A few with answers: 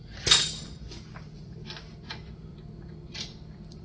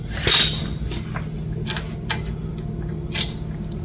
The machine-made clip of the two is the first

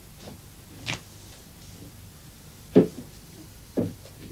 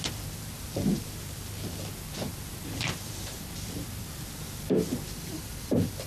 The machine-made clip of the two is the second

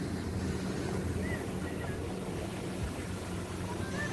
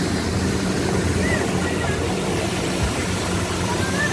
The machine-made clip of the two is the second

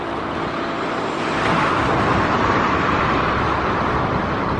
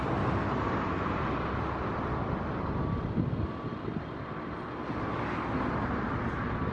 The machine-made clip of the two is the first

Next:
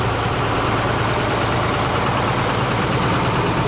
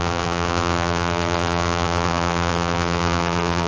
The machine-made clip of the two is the second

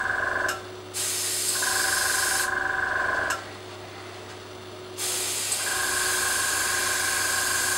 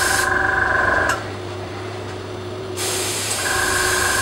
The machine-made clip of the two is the second